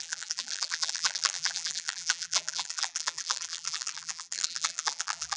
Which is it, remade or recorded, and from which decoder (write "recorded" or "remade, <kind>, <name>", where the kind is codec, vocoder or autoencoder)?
remade, vocoder, BigVGAN v2